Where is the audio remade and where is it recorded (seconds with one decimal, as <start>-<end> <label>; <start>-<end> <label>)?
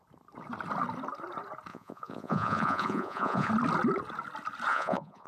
0.0-1.7 recorded; 1.7-3.5 remade; 3.5-4.7 recorded; 4.7-5.3 remade